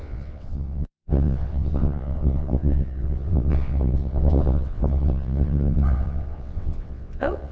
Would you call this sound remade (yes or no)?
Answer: yes